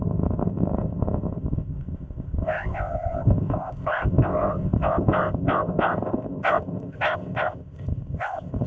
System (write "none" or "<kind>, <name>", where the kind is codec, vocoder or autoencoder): codec, ZipCodec